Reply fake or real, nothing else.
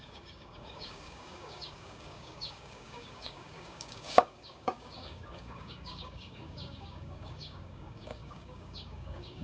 fake